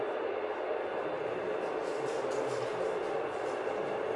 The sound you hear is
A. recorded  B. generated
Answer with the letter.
A